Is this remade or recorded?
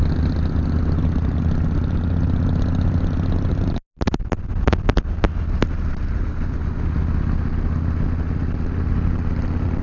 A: recorded